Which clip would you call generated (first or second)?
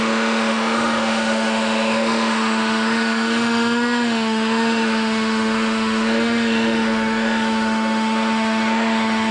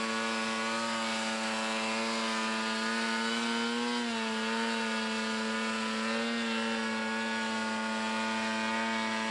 first